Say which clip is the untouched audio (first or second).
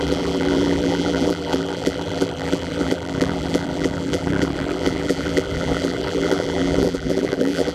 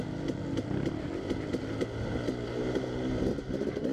second